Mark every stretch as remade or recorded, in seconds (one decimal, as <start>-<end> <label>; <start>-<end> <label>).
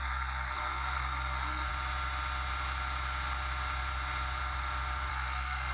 0.0-1.7 remade; 1.7-5.1 recorded; 5.1-5.7 remade